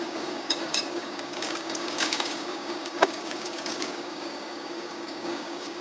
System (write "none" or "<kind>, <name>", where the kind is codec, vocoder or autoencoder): codec, DAC